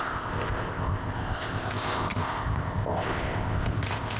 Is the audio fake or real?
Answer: fake